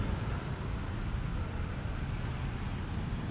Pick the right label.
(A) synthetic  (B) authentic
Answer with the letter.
B